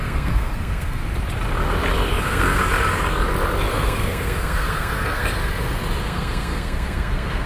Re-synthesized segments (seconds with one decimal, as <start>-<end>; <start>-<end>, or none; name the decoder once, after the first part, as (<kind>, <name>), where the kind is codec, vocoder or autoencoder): 0.0-1.0 (codec, SNAC); 2.2-2.6; 3.7-5.4; 6.0-7.5